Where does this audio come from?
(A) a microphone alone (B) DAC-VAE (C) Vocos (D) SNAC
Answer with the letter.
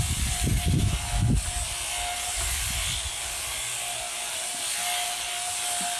A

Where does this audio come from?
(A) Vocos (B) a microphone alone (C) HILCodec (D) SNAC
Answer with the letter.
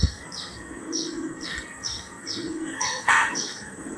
D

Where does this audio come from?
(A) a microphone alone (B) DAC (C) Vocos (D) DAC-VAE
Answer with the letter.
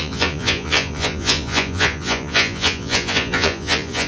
C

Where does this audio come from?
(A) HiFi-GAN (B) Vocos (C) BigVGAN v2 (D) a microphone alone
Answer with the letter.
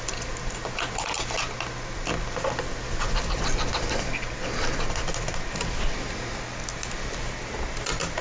D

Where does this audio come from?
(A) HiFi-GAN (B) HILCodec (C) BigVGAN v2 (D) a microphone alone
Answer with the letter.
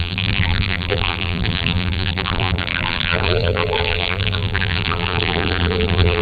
C